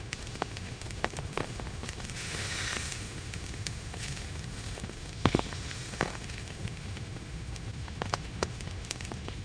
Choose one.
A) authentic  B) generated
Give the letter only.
B